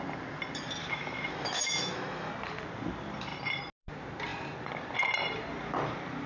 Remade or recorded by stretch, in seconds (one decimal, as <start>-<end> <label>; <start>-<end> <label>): 0.0-0.8 recorded; 0.8-2.3 remade; 2.3-6.3 recorded